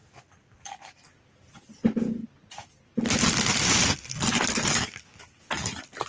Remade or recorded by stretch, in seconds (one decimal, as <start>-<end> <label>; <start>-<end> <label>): 0.0-6.1 recorded